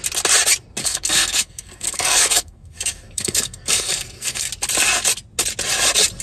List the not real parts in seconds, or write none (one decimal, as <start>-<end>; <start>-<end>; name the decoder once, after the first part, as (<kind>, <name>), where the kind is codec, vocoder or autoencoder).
0.8-4.5 (codec, SNAC)